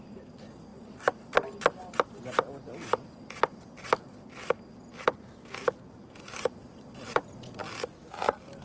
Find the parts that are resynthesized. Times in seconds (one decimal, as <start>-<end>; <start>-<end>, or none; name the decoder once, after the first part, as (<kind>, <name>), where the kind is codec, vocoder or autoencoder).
0.0-0.7 (vocoder, BigVGAN v2); 5.9-8.6